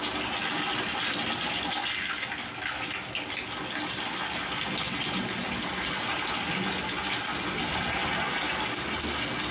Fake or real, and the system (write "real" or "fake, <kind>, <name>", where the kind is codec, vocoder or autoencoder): real